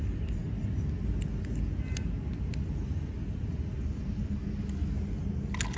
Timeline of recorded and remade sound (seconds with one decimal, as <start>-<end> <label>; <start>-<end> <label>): 0.0-5.8 recorded